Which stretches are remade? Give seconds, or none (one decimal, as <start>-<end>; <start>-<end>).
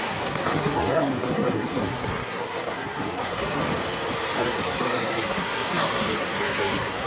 0.0-3.6; 4.4-7.1